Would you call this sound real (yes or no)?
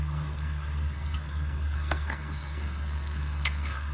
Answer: no